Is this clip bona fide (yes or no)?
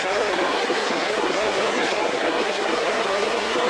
no